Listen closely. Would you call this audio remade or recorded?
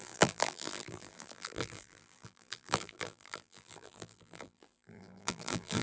remade